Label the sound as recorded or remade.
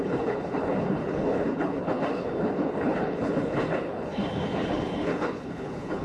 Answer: remade